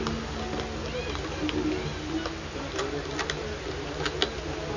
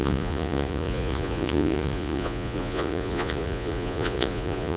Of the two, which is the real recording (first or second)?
first